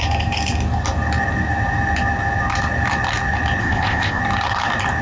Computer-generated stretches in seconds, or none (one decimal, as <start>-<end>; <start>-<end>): 3.6-4.2